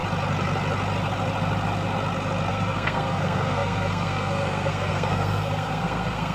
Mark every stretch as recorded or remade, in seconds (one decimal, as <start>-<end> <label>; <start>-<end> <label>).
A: 0.0-2.5 recorded; 2.5-6.3 remade